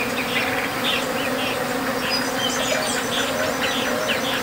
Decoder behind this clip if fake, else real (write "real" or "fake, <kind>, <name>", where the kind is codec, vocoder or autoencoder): real